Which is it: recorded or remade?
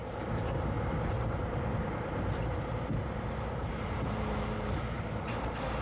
remade